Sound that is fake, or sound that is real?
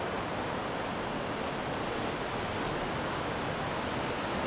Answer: real